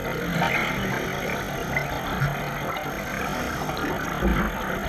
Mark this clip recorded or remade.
recorded